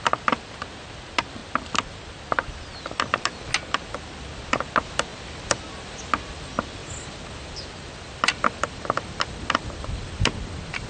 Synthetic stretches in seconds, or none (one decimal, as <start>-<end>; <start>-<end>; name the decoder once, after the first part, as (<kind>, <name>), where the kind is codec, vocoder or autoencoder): none